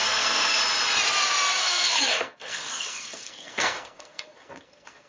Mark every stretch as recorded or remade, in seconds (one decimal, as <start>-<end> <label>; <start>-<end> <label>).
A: 0.0-0.6 remade; 0.6-1.6 recorded; 1.6-5.1 remade